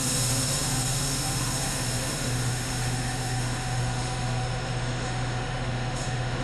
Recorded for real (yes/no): no